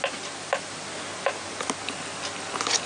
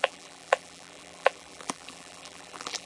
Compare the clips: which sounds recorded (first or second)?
first